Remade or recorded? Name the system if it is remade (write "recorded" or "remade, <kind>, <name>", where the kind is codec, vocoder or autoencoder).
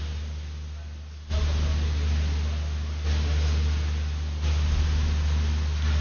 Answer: recorded